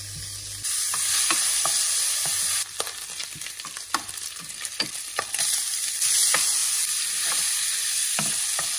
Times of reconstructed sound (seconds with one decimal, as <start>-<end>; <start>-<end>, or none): none